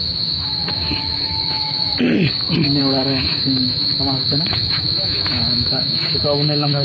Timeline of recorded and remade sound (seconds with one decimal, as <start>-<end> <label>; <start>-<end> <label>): 0.0-1.9 remade; 1.9-2.8 recorded; 2.8-6.8 remade